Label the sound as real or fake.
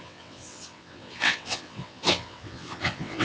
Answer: fake